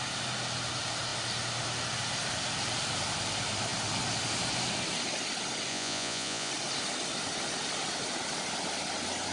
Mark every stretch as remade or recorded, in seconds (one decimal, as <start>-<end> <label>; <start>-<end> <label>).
0.0-5.7 recorded; 5.7-6.5 remade; 6.5-9.3 recorded